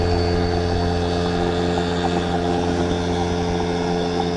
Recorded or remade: recorded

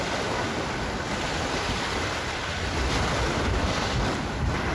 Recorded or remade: recorded